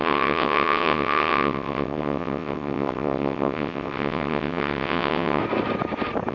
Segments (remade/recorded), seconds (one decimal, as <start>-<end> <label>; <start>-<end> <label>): 0.0-5.4 remade; 5.4-6.3 recorded